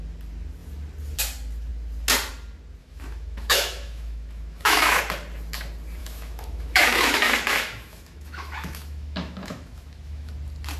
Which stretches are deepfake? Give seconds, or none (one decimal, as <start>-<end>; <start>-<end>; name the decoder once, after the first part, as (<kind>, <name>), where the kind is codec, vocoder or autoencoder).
2.8-5.0 (autoencoder, DAC-VAE); 6.0-10.3